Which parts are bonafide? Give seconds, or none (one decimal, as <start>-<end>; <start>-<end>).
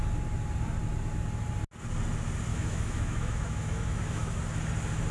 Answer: 0.0-2.5; 4.4-5.1